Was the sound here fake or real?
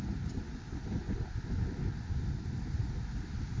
real